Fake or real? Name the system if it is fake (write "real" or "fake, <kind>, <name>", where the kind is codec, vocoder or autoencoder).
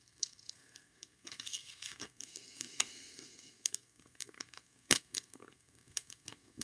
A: fake, codec, SNAC